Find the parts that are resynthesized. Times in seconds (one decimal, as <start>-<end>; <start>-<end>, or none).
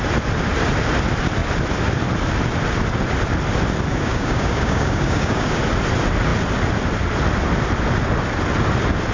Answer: 3.9-5.6